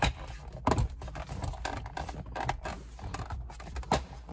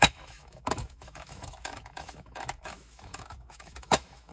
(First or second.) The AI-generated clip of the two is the second